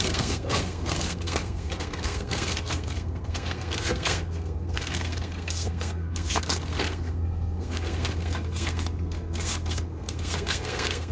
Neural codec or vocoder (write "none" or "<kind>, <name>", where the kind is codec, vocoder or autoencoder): codec, SNAC